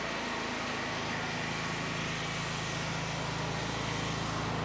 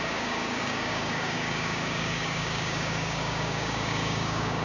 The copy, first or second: second